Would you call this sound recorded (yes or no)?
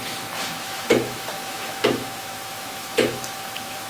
no